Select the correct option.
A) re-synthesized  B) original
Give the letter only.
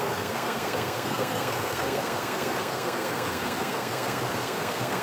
A